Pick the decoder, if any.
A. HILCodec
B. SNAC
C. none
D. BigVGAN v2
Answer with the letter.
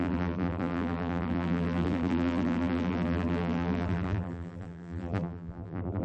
D